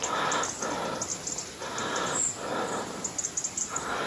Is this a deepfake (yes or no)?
no